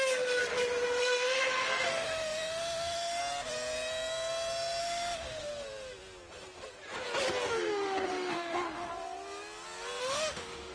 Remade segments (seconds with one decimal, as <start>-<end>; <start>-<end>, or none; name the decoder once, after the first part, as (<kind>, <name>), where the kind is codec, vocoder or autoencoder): 0.0-0.4 (autoencoder, DAC-VAE); 1.0-3.2; 4.8-5.5; 7.5-8.9; 10.0-10.7